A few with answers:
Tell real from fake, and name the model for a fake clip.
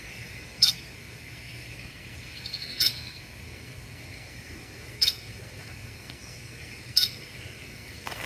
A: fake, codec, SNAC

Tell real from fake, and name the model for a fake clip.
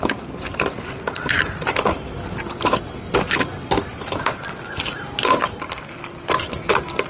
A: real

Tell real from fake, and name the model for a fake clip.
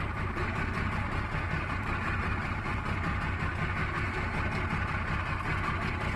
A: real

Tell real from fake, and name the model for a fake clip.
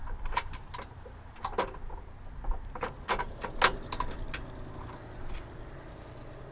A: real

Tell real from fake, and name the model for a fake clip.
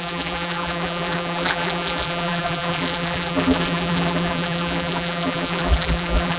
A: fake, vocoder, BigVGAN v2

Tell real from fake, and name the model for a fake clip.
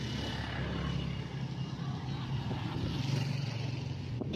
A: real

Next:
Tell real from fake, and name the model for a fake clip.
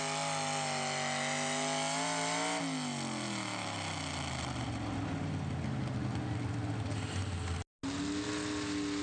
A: real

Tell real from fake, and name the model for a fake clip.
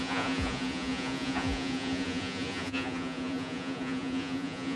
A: fake, vocoder, Vocos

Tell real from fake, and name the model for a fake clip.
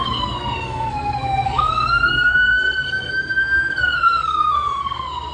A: fake, codec, SNAC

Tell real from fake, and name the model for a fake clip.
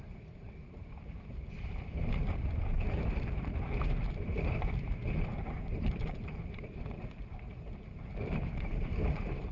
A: fake, vocoder, BigVGAN v2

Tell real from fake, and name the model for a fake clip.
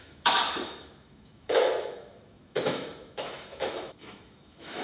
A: fake, autoencoder, DAC-VAE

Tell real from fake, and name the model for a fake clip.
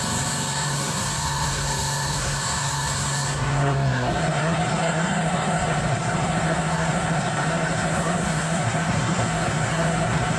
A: fake, codec, SNAC